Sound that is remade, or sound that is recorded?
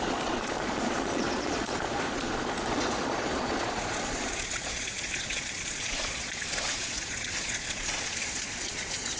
remade